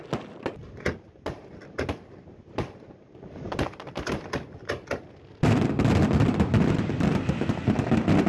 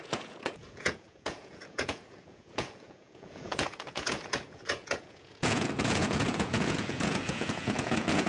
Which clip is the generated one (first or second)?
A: second